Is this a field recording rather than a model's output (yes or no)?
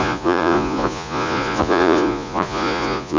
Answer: no